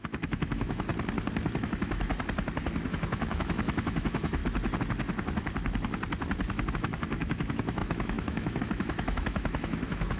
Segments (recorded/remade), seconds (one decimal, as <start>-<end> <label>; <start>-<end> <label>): 0.0-0.9 remade; 0.9-1.6 recorded; 1.6-2.1 remade; 2.1-2.9 recorded; 2.9-4.4 remade; 4.4-6.7 recorded; 6.7-10.2 remade